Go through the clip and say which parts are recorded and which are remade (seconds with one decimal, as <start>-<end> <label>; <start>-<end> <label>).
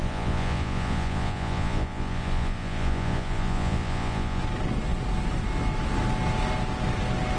0.0-4.4 remade; 4.4-7.4 recorded